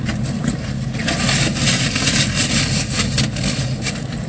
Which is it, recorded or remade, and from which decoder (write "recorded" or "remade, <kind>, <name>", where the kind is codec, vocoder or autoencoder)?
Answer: recorded